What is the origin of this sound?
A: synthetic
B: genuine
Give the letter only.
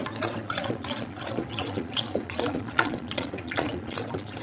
A